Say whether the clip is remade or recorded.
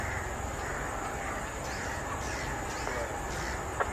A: recorded